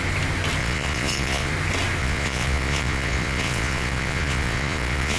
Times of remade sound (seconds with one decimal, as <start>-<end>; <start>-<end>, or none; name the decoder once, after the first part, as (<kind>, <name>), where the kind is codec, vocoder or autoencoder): 0.6-1.5 (vocoder, Vocos); 2.0-5.2